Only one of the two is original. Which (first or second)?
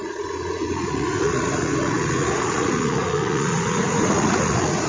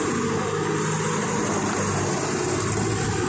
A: second